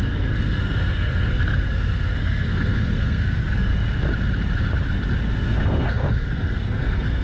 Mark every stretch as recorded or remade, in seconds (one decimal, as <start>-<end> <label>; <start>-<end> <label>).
0.0-3.7 remade; 3.7-5.4 recorded; 5.4-7.2 remade